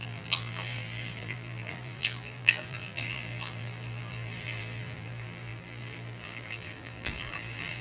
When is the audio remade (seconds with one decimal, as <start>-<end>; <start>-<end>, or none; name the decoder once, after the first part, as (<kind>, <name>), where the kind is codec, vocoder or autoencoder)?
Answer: 0.0-7.8 (vocoder, BigVGAN v2)